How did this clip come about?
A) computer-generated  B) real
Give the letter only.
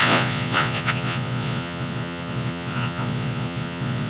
A